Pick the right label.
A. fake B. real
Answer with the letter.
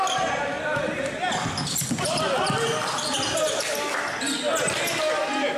B